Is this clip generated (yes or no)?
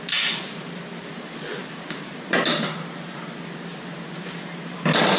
no